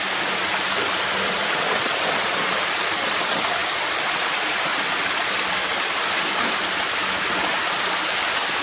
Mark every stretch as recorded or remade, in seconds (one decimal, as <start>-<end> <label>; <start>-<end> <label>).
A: 0.0-8.6 recorded